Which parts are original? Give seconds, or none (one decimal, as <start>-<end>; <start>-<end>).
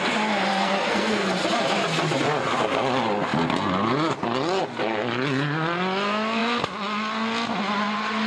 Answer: 0.0-0.5; 1.3-8.3